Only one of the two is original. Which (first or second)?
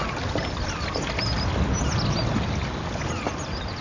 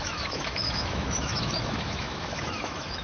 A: first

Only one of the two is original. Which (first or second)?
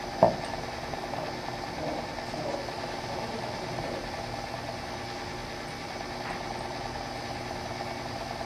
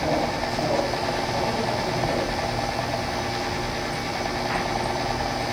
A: second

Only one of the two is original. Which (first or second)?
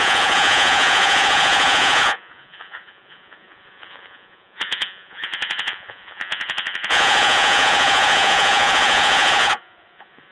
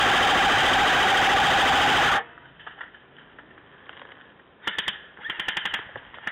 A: second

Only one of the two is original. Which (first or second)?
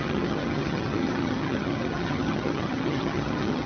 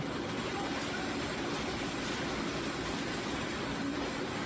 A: second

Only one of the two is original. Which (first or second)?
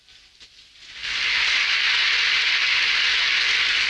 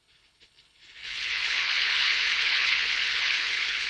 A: first